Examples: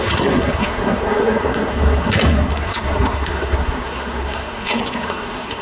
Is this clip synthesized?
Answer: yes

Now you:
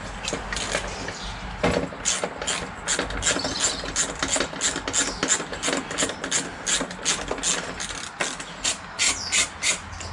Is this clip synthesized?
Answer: no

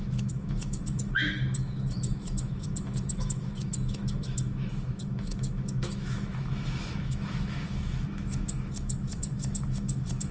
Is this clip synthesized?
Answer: yes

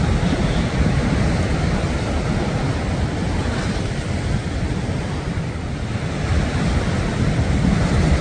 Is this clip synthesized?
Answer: no